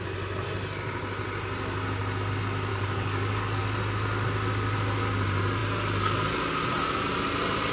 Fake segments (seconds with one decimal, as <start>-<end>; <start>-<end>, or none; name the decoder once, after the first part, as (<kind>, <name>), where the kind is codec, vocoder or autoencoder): 2.7-3.6 (codec, DAC)